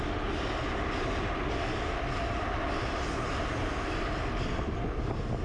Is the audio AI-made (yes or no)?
no